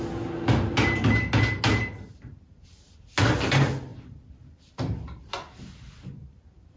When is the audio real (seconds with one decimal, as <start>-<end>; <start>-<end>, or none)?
0.0-6.8